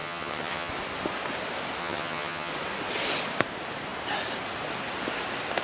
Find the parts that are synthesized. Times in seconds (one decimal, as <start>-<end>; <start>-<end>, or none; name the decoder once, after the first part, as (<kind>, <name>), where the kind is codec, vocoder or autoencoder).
0.0-0.7 (vocoder, HiFi-GAN); 1.8-2.5